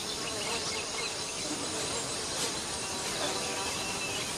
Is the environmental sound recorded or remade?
recorded